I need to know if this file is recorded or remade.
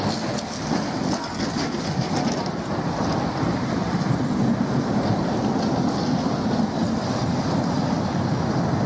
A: recorded